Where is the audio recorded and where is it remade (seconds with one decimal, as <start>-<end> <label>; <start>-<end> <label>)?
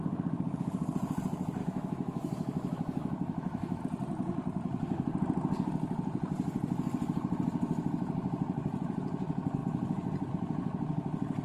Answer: 0.0-1.6 recorded; 1.6-3.8 remade; 3.8-11.4 recorded